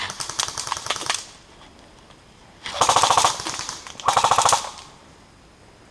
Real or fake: real